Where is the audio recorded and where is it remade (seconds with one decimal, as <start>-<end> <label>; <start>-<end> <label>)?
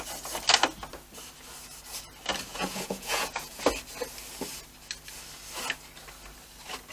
0.0-2.5 recorded; 2.5-3.6 remade; 3.6-6.9 recorded